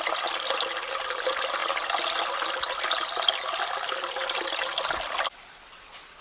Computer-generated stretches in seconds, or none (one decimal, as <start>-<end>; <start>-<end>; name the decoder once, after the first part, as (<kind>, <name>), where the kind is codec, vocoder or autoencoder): none